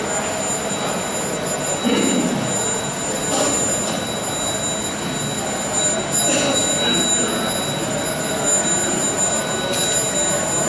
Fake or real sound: real